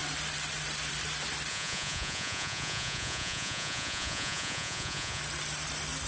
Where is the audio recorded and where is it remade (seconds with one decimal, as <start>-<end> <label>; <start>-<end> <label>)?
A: 0.0-1.5 recorded; 1.5-5.2 remade; 5.2-6.1 recorded